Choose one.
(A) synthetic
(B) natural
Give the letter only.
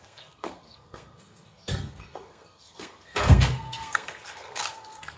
A